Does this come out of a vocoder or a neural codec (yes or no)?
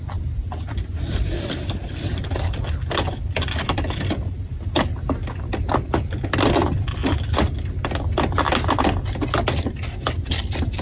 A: no